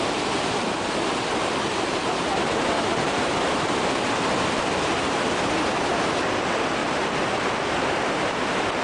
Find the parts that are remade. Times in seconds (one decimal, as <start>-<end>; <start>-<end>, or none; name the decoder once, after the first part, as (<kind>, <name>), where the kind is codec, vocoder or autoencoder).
1.3-4.6 (vocoder, BigVGAN v2); 6.8-7.3